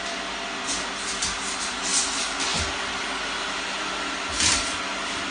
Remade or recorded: recorded